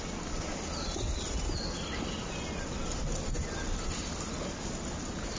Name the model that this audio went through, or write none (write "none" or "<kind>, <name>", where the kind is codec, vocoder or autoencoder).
none